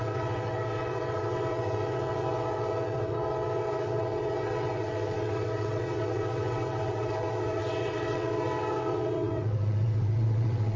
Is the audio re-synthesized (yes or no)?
yes